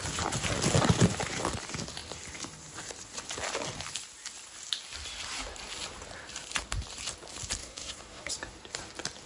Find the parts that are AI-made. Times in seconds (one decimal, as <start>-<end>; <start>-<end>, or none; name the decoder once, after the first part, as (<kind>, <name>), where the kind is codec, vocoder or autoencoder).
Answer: 7.6-8.3 (codec, SNAC)